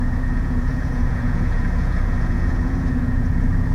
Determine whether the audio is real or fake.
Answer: fake